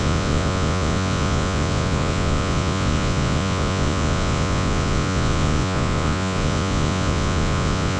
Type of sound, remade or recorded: remade